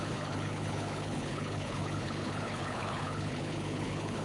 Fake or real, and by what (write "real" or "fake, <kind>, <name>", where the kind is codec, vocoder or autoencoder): fake, codec, HILCodec